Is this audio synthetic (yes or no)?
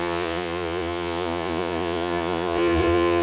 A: yes